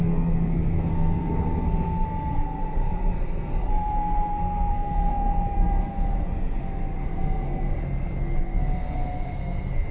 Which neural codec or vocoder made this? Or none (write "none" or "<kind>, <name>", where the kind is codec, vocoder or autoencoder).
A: codec, SNAC